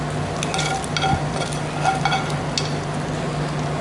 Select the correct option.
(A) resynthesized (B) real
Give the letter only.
B